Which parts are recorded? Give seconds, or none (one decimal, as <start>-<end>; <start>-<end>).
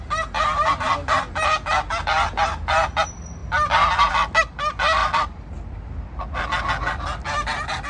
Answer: 0.0-7.9